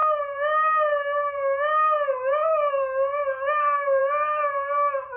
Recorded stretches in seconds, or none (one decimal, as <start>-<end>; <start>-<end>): 0.0-5.2